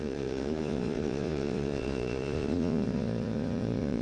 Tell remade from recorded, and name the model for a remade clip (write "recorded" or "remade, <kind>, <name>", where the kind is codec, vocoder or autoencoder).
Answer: remade, vocoder, Vocos